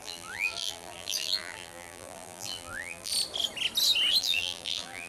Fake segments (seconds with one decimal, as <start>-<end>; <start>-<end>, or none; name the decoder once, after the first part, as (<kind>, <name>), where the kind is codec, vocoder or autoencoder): 0.0-3.1 (vocoder, BigVGAN v2); 4.2-5.1